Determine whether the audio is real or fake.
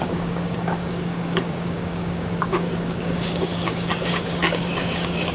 fake